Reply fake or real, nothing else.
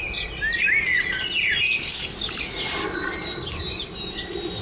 real